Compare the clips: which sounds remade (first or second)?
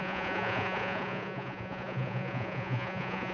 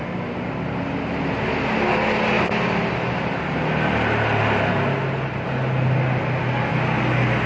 first